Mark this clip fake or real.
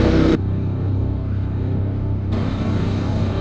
fake